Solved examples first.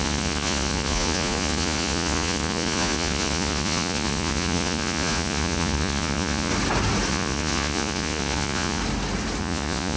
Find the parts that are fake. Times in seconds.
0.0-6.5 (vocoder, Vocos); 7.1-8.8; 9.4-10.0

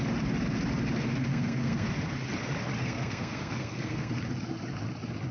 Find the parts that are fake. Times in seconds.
1.3-1.9 (codec, SNAC); 2.8-4.1

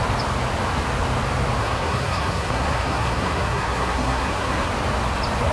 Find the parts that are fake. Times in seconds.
1.6-4.7 (codec, SNAC)

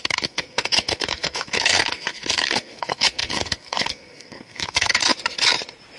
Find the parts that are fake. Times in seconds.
0.0-5.0 (codec, SNAC)

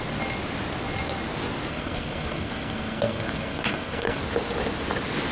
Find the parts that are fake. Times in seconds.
1.7-4.2 (codec, SNAC)

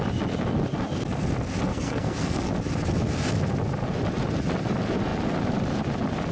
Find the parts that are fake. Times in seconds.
1.7-2.5 (codec, SNAC)

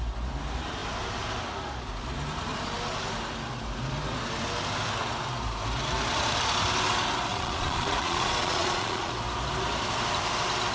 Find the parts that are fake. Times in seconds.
7.3-9.1 (vocoder, Vocos)